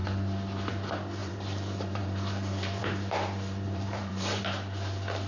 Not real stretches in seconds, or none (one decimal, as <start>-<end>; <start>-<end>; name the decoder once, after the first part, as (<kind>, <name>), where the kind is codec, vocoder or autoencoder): 1.2-4.4 (vocoder, BigVGAN v2)